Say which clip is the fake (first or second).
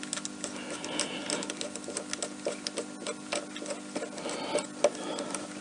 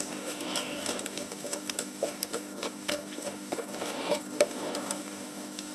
second